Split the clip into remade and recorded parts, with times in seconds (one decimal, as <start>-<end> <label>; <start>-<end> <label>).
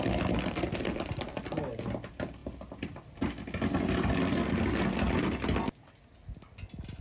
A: 0.0-7.0 recorded